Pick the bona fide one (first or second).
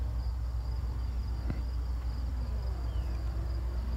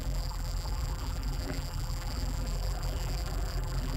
first